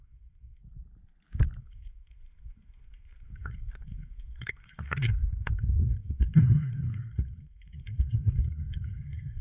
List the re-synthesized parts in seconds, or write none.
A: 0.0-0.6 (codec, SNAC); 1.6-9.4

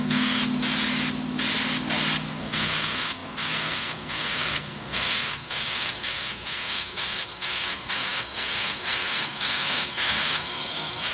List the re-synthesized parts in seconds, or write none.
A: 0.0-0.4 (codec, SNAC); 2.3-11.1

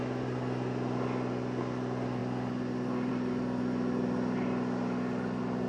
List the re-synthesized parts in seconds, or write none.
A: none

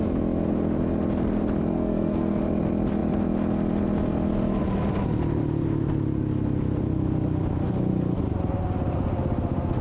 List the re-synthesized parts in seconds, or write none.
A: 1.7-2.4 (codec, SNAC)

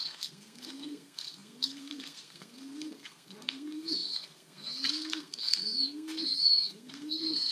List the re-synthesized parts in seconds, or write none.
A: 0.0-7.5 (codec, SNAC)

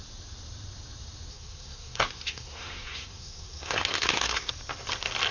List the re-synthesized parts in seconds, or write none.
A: 1.3-4.5 (codec, SNAC)

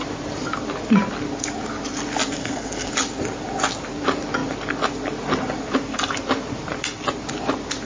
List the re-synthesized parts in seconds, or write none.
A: 2.4-2.9 (codec, SNAC)